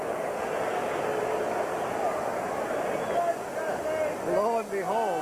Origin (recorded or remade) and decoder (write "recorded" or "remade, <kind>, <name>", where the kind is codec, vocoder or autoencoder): recorded